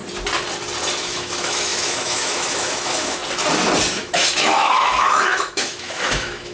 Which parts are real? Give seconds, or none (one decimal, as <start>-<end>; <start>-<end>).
0.0-1.0; 3.2-3.9